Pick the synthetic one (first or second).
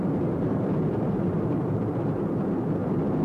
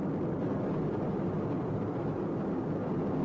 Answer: first